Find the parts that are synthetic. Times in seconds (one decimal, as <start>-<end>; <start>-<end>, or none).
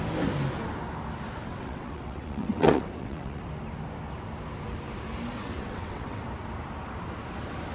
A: 1.5-3.4; 5.4-6.2